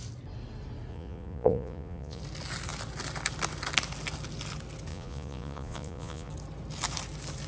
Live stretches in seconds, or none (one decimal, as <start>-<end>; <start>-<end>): 0.0-0.9; 2.2-4.9; 6.3-7.5